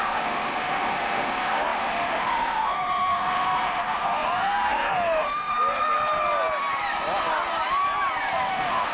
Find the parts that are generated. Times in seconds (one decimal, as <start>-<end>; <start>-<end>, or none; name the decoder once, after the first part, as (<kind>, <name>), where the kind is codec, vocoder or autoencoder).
0.0-5.5 (autoencoder, DAC-VAE); 8.5-8.9